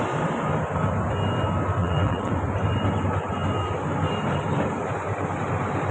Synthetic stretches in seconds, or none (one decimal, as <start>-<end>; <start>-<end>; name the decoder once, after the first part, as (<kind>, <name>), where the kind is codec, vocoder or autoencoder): 1.8-2.3 (vocoder, WaveNeXt)